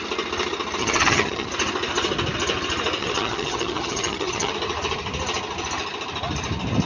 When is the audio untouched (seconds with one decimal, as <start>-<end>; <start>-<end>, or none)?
0.0-0.8; 1.5-3.0; 4.5-6.9